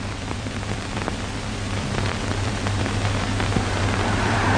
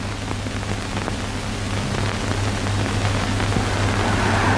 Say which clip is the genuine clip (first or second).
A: second